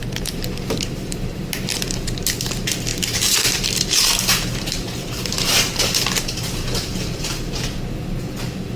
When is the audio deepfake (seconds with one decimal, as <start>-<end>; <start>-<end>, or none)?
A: 0.0-1.5; 2.9-7.8

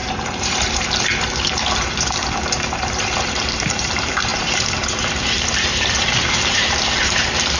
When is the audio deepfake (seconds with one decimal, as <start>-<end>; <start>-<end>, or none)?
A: 0.0-7.6

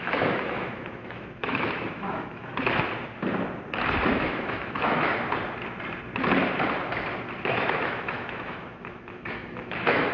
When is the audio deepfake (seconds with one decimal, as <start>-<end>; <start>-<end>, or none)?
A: 0.0-2.5; 4.1-5.1; 7.4-10.1

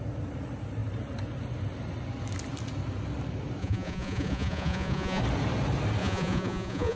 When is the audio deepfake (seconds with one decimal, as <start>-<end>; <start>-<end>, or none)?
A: 3.6-5.2; 6.0-7.0